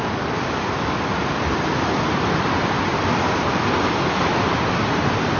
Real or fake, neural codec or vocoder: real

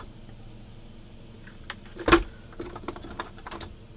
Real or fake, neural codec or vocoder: real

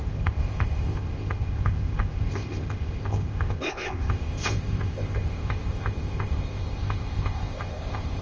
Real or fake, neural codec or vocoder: fake, codec, ZipCodec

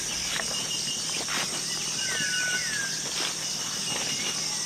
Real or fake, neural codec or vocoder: real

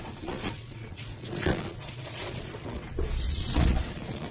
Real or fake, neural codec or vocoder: fake, vocoder, Vocos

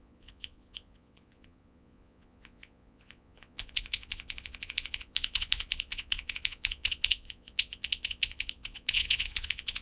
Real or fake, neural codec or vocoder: fake, vocoder, Vocos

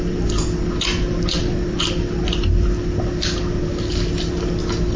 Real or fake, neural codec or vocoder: real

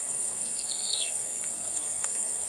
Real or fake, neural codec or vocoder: fake, codec, SNAC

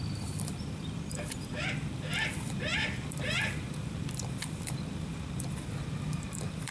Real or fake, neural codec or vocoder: fake, vocoder, BigVGAN v2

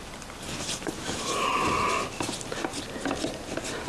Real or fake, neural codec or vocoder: real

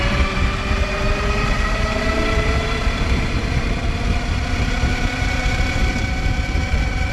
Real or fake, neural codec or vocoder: fake, vocoder, BigVGAN v2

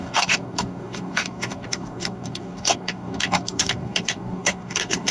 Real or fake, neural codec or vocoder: fake, codec, DAC